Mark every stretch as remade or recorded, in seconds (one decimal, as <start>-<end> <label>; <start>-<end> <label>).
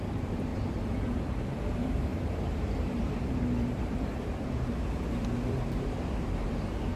0.0-0.5 remade; 0.5-1.0 recorded; 1.0-7.0 remade